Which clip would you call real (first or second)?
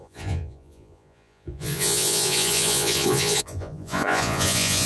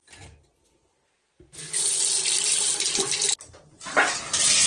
second